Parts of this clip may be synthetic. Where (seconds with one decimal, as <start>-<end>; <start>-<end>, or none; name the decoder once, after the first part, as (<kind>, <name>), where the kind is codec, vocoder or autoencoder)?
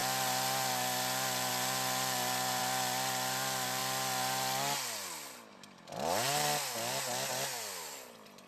none